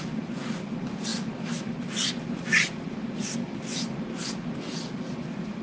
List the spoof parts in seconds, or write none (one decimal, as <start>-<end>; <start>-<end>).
none